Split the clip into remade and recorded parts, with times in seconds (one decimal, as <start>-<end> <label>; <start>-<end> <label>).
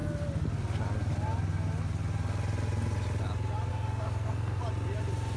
0.0-3.7 recorded; 3.7-4.6 remade; 4.6-5.4 recorded